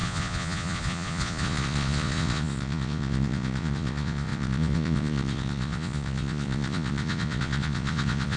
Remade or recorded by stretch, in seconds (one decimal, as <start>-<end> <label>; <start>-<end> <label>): 0.0-8.4 remade